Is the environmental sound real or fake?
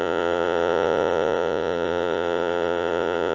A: fake